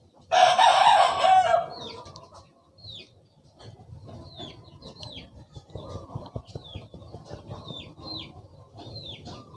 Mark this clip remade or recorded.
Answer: recorded